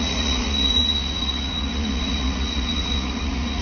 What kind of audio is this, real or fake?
fake